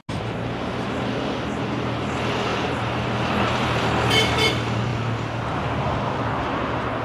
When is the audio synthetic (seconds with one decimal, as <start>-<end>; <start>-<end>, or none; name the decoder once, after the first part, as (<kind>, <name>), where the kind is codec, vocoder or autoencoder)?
2.5-4.5 (vocoder, BigVGAN v2)